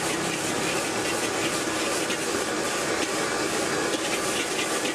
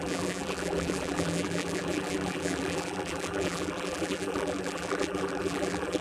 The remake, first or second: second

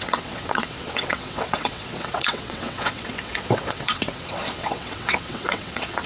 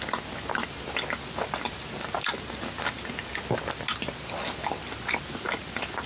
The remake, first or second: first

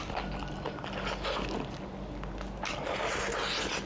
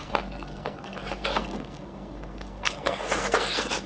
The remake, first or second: second